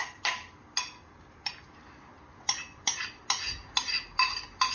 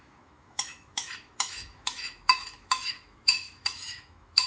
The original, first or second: first